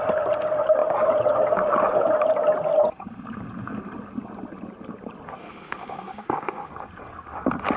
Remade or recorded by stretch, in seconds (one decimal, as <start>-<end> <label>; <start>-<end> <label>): 0.0-5.4 recorded; 5.4-6.7 remade; 6.7-7.8 recorded